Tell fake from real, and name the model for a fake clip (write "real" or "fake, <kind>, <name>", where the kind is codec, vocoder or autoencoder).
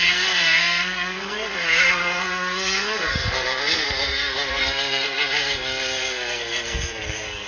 fake, codec, SNAC